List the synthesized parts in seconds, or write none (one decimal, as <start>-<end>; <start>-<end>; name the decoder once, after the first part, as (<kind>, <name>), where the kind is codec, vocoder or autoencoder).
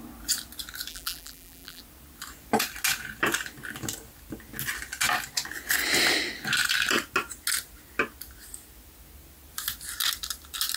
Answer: 0.9-1.8 (vocoder, BigVGAN v2)